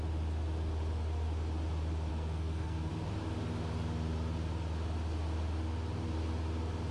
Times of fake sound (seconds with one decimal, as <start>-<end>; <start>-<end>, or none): 2.1-2.9